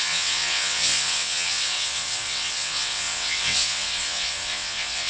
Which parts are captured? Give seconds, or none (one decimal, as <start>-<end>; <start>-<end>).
none